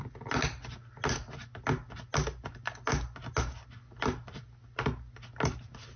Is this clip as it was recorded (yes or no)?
yes